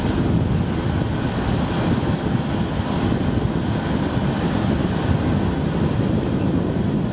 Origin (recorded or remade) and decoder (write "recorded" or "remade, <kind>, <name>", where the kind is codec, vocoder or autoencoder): recorded